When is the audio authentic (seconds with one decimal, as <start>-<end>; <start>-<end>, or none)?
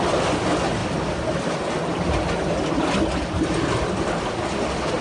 0.0-5.0